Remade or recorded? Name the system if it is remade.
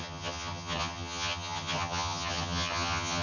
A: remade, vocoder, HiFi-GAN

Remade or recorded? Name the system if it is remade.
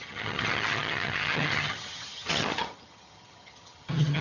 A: remade, vocoder, HiFi-GAN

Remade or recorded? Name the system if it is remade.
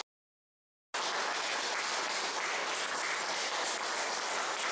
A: recorded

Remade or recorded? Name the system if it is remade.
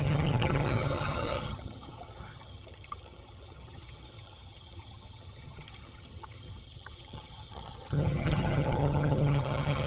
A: remade, vocoder, HiFi-GAN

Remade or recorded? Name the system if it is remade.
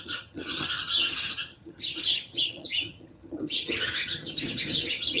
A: remade, vocoder, HiFi-GAN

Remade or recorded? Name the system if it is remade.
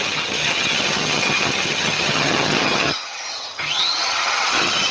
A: remade, vocoder, HiFi-GAN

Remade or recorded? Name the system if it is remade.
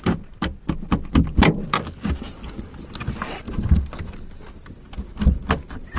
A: recorded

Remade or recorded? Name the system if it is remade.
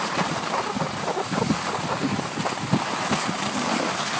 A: recorded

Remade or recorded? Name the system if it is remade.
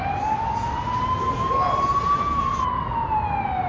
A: recorded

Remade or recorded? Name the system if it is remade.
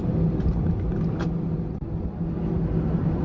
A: recorded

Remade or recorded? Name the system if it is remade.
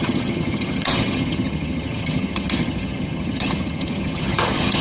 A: remade, vocoder, HiFi-GAN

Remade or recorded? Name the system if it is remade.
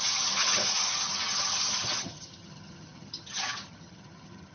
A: remade, vocoder, HiFi-GAN